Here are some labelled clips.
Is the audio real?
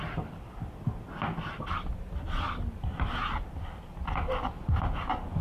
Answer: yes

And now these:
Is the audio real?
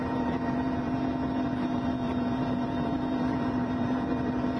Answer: no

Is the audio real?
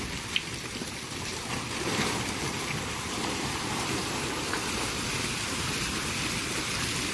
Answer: no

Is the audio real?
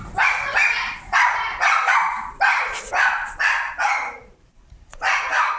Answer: no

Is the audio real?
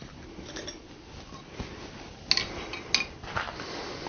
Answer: yes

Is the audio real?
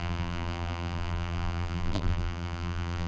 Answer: no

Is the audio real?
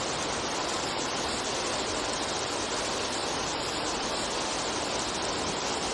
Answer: no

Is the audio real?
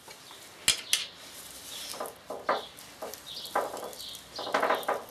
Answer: yes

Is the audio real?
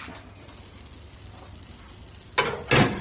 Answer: yes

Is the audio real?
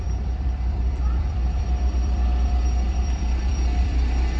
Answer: no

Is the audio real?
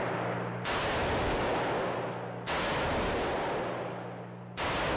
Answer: yes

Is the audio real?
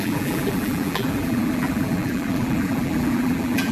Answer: no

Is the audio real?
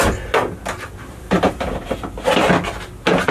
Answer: yes